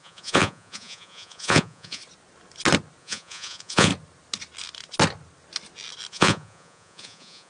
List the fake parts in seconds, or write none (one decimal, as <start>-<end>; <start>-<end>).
0.0-2.0; 3.0-3.9; 6.1-7.5